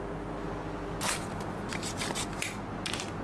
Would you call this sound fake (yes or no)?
no